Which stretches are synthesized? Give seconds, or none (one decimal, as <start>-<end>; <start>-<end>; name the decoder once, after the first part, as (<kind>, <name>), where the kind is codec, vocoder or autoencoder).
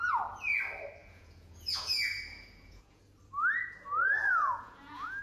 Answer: 1.0-3.0 (vocoder, Vocos); 4.0-5.2